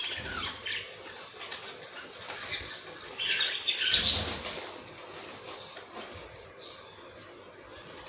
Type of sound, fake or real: real